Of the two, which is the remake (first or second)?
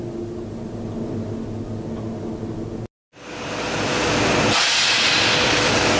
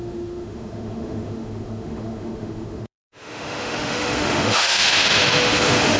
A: second